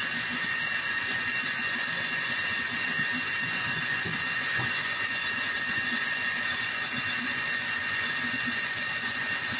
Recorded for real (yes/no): no